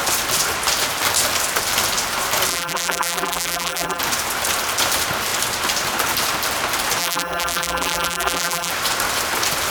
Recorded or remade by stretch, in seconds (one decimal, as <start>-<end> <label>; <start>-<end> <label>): 0.0-2.5 recorded; 2.5-4.0 remade; 4.0-7.0 recorded; 7.0-8.7 remade; 8.7-9.7 recorded